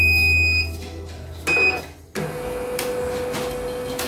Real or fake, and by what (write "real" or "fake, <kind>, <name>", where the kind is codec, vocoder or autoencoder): real